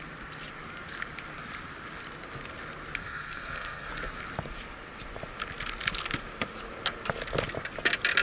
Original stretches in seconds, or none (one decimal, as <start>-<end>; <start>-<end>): 0.0-3.0; 3.9-8.2